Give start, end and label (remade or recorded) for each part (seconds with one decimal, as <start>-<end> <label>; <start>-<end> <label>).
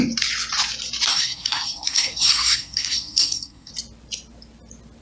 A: 0.0-1.1 recorded; 1.1-3.7 remade; 3.7-5.0 recorded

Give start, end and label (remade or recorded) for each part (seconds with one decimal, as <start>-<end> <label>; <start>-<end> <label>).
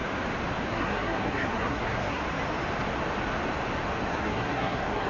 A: 0.0-0.7 recorded; 0.7-2.2 remade; 2.2-4.1 recorded; 4.1-5.1 remade